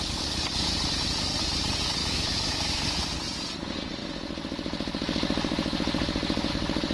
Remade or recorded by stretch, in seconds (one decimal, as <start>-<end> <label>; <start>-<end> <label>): 0.0-2.0 recorded; 2.0-2.8 remade; 2.8-6.9 recorded

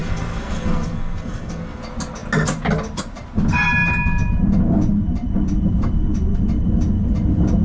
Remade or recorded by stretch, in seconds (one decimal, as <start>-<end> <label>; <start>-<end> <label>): 0.0-1.8 remade; 1.8-7.6 recorded

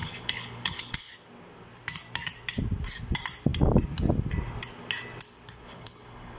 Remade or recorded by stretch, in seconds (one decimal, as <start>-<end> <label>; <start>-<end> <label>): 0.0-1.1 remade; 1.1-5.6 recorded; 5.6-6.4 remade

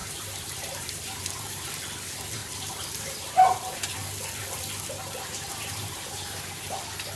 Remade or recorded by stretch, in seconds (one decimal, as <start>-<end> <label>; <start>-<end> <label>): 0.0-1.8 remade; 1.8-2.4 recorded; 2.4-3.8 remade; 3.8-5.5 recorded; 5.5-6.8 remade; 6.8-7.2 recorded

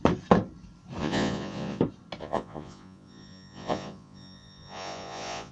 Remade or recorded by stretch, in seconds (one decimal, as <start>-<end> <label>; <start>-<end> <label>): 0.0-1.0 recorded; 1.0-1.8 remade; 1.8-2.2 recorded; 2.2-5.5 remade

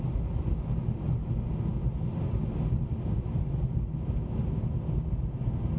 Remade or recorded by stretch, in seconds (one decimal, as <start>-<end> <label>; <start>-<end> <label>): 0.0-5.8 recorded

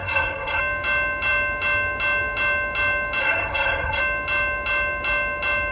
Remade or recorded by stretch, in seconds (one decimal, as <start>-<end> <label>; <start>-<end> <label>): 0.0-0.6 remade; 0.6-3.2 recorded; 3.2-4.0 remade; 4.0-5.7 recorded

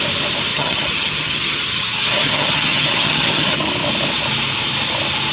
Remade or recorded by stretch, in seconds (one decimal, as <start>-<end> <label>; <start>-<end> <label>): 0.0-0.5 recorded; 0.5-3.7 remade; 3.7-5.3 recorded